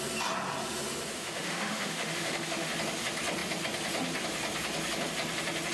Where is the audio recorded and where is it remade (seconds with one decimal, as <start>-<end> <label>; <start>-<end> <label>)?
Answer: 0.0-1.1 recorded; 1.1-2.7 remade; 2.7-5.7 recorded